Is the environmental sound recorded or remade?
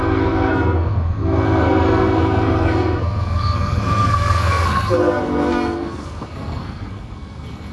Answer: remade